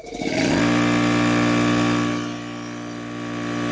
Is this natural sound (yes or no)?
yes